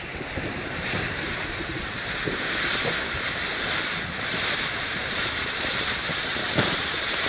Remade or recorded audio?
remade